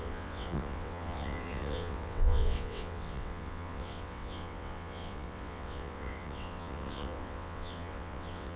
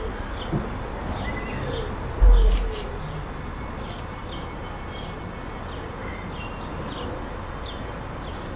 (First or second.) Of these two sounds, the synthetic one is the first